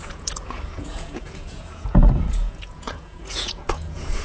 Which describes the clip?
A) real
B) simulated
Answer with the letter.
B